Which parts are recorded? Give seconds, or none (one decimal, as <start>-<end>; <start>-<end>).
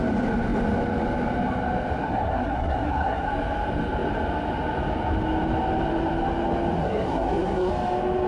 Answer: 0.0-2.0; 3.3-6.8; 7.7-8.3